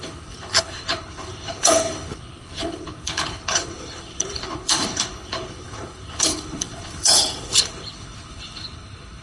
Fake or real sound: fake